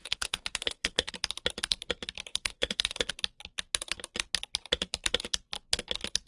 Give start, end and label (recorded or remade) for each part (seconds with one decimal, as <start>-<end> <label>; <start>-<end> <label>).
0.0-1.1 remade; 1.1-2.3 recorded; 2.3-3.1 remade; 3.1-6.3 recorded

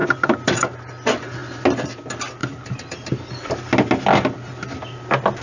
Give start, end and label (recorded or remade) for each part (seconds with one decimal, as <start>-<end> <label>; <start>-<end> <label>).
0.0-0.6 remade; 0.6-2.4 recorded; 2.4-3.1 remade; 3.1-5.4 recorded

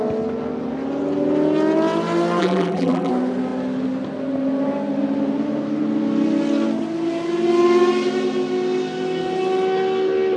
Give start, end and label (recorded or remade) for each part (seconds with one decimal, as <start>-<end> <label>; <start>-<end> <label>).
0.0-2.4 recorded; 2.4-3.1 remade; 3.1-10.4 recorded

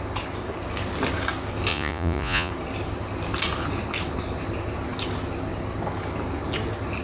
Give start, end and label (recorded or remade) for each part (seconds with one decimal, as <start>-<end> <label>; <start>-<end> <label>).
0.0-1.7 recorded; 1.7-2.5 remade; 2.5-7.0 recorded

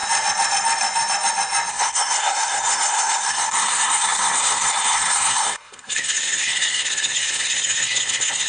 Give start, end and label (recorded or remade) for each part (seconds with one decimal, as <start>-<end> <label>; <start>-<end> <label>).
0.0-1.7 recorded; 1.7-8.5 remade